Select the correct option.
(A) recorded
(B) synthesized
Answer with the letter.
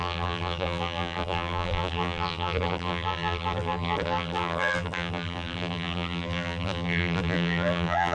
B